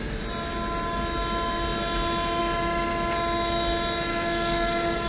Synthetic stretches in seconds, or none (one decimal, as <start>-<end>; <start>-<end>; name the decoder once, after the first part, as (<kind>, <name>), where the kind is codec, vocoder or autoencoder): 4.1-5.1 (codec, DAC)